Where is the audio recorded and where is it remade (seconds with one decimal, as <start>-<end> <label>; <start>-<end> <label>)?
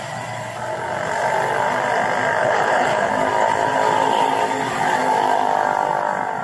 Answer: 0.0-2.4 recorded; 2.4-3.1 remade; 3.1-6.4 recorded